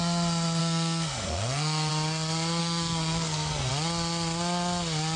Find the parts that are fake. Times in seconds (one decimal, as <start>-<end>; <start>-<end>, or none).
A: 0.6-1.9; 2.6-3.7